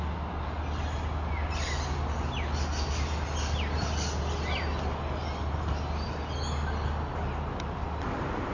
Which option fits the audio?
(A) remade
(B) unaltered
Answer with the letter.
B